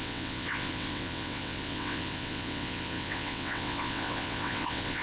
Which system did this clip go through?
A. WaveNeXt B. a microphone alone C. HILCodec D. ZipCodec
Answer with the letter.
A